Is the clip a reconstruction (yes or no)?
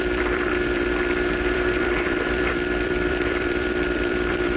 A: yes